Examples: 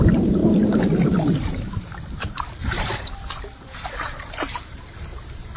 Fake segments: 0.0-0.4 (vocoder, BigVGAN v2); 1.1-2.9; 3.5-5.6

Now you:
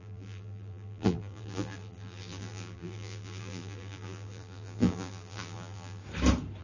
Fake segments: 0.0-6.0 (vocoder, BigVGAN v2)

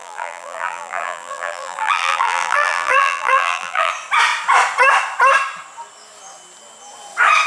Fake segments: 0.0-3.9 (vocoder, BigVGAN v2)

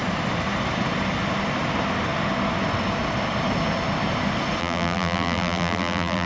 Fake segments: 4.6-6.3 (vocoder, BigVGAN v2)

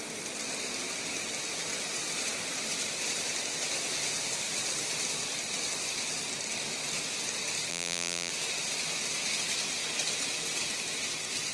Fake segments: 7.7-8.3 (vocoder, BigVGAN v2)

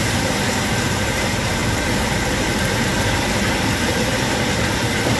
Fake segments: 0.0-5.2 (vocoder, BigVGAN v2)

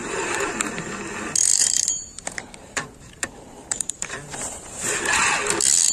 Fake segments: 0.0-0.5 (vocoder, BigVGAN v2); 1.5-5.0